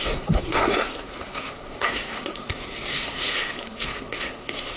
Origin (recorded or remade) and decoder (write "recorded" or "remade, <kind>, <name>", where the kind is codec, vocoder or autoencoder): remade, codec, SNAC